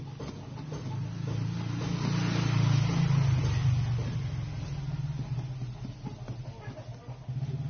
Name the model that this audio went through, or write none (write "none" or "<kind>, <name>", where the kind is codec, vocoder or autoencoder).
none